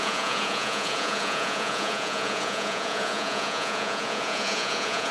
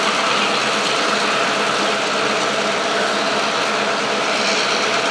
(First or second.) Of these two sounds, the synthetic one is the first